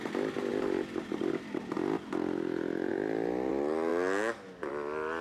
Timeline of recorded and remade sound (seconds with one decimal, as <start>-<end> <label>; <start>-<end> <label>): 0.0-5.2 recorded